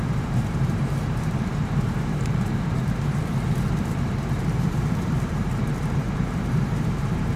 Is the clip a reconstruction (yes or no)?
yes